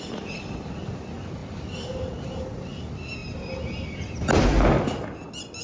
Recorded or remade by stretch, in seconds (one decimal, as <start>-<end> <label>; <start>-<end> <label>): 0.0-5.6 recorded